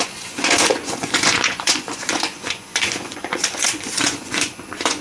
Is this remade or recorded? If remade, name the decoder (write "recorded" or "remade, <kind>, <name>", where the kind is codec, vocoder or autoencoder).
remade, vocoder, Vocos